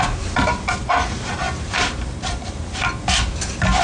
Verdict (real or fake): real